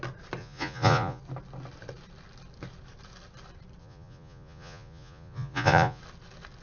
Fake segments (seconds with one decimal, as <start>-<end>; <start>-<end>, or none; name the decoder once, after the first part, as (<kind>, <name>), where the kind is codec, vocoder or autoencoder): 0.4-1.2 (vocoder, Vocos); 3.8-6.0

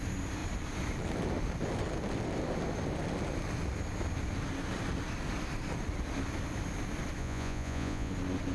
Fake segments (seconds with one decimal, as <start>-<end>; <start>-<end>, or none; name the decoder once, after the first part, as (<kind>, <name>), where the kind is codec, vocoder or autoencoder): 7.2-8.1 (vocoder, Vocos)

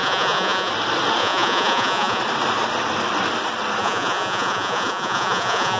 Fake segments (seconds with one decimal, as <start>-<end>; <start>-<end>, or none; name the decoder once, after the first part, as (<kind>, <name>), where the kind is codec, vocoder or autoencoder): 0.0-0.7 (vocoder, Vocos); 1.2-2.2; 3.8-5.8

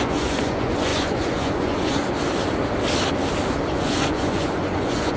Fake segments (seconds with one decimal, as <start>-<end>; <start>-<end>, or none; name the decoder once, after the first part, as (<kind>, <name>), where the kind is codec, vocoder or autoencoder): 0.0-2.0 (vocoder, Vocos); 3.7-5.2

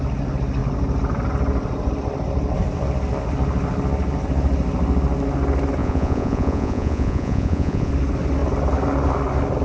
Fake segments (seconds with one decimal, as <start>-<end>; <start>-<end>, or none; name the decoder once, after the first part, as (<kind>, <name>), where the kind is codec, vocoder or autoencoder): 5.8-7.9 (vocoder, Vocos)

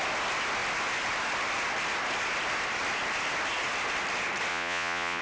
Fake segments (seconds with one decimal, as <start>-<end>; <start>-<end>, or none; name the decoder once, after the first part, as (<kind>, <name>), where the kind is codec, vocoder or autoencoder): 4.5-5.2 (vocoder, Vocos)

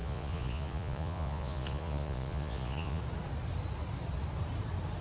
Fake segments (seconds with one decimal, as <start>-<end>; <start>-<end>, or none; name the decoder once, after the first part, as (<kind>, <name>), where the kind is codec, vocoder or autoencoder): 0.0-3.0 (vocoder, Vocos)